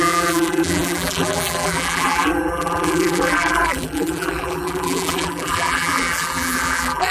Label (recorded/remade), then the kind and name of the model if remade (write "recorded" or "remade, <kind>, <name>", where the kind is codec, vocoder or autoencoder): remade, vocoder, BigVGAN v2